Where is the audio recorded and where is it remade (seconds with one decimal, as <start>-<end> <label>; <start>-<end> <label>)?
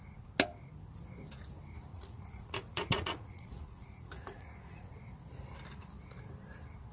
0.0-1.9 recorded; 1.9-4.9 remade; 4.9-6.9 recorded